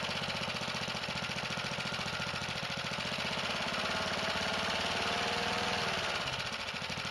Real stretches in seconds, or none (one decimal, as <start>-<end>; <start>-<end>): 0.0-7.1